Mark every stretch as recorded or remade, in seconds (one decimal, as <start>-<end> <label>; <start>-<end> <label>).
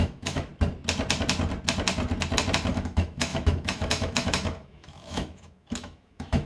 0.0-0.5 remade; 0.5-2.7 recorded; 2.7-6.5 remade